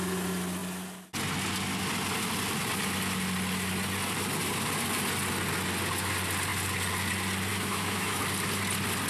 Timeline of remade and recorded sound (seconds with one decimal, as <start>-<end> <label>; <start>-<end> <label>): 0.0-7.5 recorded; 7.5-8.2 remade; 8.2-9.1 recorded